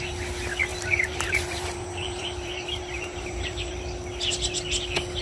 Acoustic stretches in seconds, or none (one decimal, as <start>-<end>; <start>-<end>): 0.0-0.7; 3.8-5.2